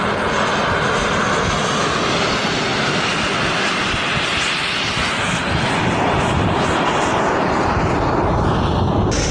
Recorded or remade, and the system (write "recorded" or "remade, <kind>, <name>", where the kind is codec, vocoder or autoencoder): recorded